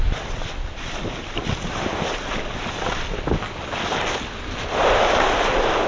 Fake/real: real